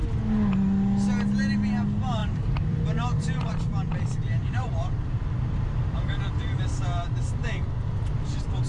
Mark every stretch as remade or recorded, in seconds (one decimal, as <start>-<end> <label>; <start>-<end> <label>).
0.0-2.2 recorded; 2.2-6.6 remade; 6.6-8.7 recorded